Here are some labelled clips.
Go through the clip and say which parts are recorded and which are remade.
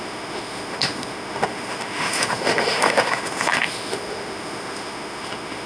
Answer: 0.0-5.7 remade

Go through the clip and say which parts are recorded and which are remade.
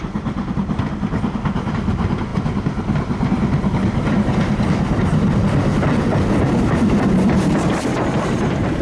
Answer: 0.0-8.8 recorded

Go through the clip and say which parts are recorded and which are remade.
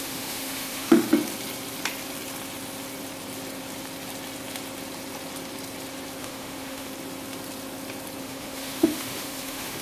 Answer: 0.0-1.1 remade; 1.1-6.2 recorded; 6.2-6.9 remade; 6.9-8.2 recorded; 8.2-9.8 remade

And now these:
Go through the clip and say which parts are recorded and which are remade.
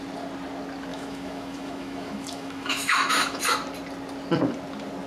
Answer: 0.0-0.9 recorded; 0.9-3.4 remade; 3.4-5.1 recorded